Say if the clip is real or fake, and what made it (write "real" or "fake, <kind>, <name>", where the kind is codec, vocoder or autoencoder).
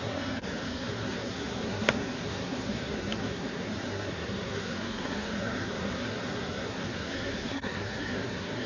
fake, codec, SNAC